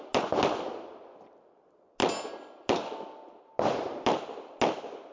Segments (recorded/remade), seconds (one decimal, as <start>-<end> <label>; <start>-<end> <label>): 0.0-5.1 recorded